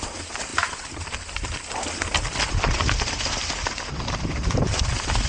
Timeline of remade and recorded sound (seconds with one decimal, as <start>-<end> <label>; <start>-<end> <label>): 0.0-5.3 recorded